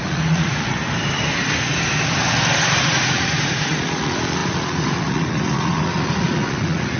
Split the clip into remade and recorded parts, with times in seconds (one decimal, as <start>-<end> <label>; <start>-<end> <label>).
0.0-0.8 remade; 0.8-2.8 recorded; 2.8-7.0 remade